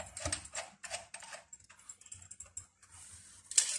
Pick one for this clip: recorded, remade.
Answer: recorded